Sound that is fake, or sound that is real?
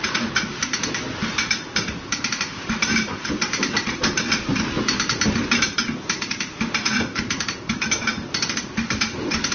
fake